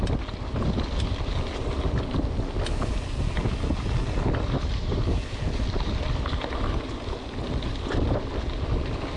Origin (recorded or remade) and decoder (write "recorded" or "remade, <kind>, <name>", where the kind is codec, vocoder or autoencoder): recorded